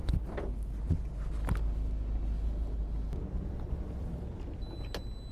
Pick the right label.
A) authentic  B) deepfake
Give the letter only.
A